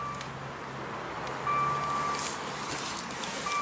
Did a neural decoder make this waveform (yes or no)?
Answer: no